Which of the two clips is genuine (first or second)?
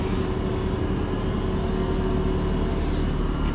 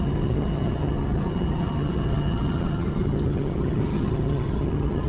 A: first